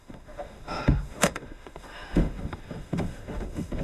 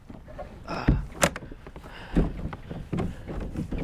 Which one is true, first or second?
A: second